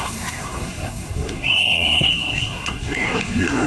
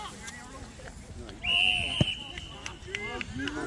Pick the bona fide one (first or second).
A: second